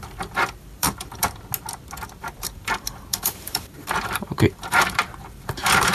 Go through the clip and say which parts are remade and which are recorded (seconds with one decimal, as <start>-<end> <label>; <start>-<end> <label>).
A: 0.0-1.2 remade; 1.2-2.2 recorded; 2.2-5.9 remade